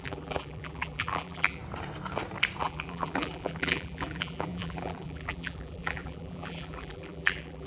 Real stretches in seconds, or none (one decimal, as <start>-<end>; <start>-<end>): 1.6-2.6